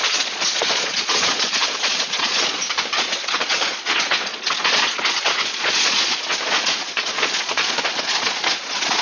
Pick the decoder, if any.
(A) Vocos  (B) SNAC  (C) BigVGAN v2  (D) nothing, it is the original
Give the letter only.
A